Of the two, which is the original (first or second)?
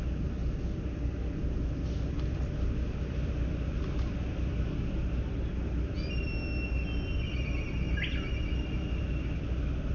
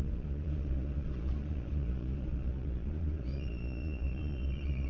first